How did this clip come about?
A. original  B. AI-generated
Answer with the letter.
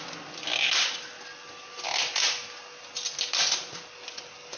A